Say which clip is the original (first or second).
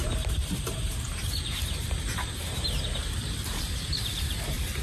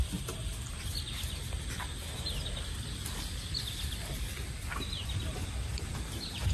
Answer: second